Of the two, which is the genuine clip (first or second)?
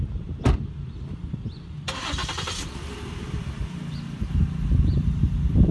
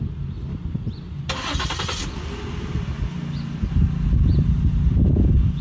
second